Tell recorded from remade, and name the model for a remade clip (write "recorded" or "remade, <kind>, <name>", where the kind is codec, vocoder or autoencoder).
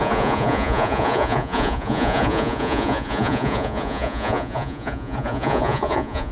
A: remade, vocoder, Vocos